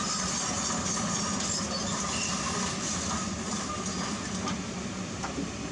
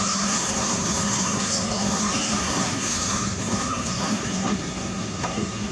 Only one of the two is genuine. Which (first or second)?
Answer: first